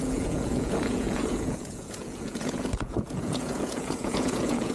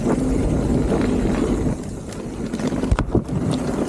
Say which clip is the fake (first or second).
first